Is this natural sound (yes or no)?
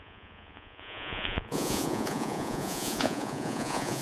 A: no